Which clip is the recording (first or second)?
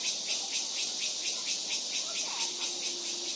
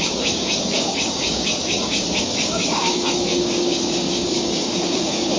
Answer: first